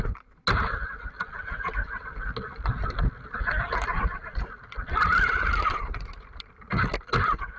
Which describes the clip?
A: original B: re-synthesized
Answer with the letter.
A